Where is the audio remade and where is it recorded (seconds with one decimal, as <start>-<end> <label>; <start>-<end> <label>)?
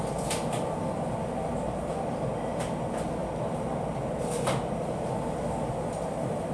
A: 0.0-6.5 recorded